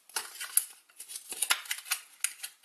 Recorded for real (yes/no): yes